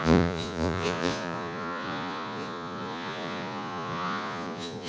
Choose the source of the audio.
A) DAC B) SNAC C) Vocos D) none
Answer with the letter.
C